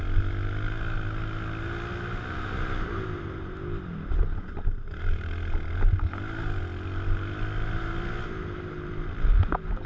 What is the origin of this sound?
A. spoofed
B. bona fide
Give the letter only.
B